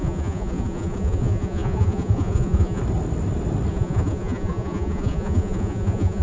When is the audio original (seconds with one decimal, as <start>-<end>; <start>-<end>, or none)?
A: 2.8-3.7